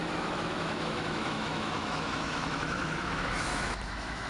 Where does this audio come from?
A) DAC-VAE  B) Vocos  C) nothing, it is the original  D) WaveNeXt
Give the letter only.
A